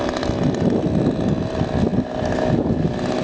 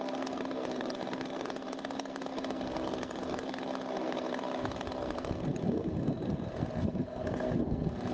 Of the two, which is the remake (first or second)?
second